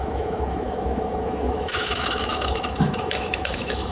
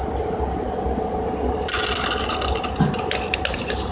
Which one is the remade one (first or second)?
first